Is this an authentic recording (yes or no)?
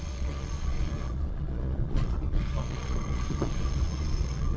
no